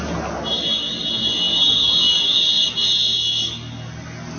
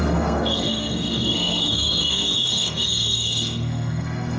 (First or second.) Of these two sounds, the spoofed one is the second